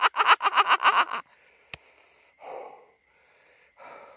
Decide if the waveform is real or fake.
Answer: real